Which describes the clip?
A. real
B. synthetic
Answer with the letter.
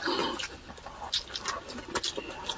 A